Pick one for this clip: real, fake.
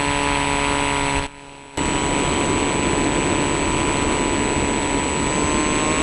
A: real